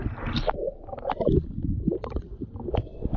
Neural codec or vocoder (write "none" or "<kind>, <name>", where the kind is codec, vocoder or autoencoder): none